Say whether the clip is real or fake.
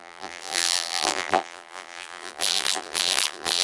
fake